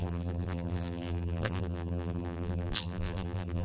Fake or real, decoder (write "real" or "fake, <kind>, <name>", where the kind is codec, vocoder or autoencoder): fake, vocoder, BigVGAN v2